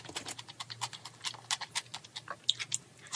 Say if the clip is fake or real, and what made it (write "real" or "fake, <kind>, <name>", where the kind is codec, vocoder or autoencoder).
real